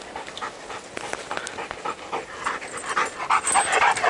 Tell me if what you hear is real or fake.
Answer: real